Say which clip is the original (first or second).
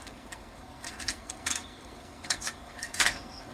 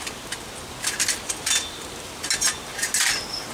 second